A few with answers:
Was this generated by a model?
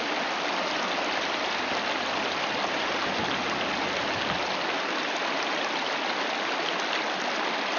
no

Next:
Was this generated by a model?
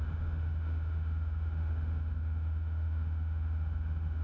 yes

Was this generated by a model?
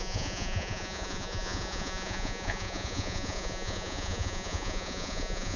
yes